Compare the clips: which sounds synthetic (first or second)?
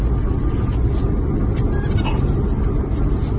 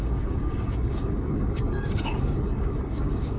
second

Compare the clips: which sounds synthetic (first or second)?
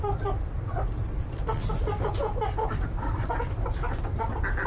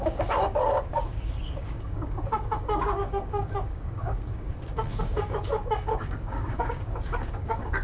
second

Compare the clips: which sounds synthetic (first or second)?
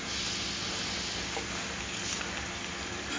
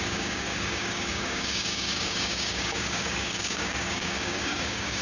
second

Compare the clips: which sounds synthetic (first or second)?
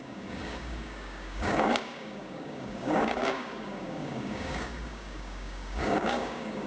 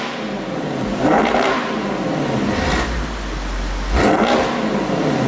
first